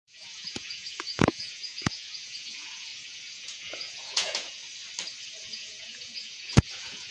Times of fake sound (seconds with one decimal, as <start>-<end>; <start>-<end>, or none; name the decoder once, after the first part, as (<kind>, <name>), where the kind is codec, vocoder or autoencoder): 0.0-4.6 (vocoder, Vocos); 5.4-7.1

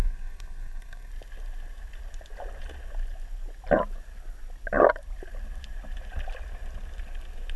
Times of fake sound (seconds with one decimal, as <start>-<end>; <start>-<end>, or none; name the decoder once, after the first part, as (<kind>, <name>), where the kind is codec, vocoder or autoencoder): 0.0-1.1 (codec, SNAC)

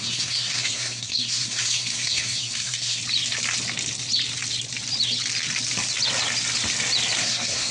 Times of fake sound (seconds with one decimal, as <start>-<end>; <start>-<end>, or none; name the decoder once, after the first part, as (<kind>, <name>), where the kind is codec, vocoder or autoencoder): 0.0-3.0 (codec, SNAC); 7.2-7.7

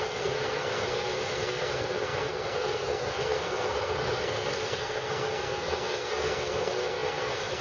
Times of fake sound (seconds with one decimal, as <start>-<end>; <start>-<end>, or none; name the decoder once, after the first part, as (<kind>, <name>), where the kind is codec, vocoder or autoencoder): 0.0-7.6 (codec, SNAC)

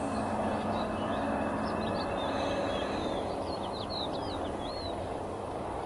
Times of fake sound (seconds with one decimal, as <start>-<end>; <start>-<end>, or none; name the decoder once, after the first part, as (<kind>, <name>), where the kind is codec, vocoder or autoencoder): 0.0-1.5 (codec, DAC); 5.0-5.9

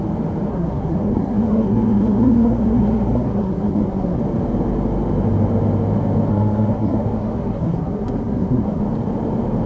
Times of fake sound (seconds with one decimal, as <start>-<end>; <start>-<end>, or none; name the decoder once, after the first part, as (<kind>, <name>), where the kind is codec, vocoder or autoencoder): 0.5-4.2 (codec, SNAC); 6.3-8.8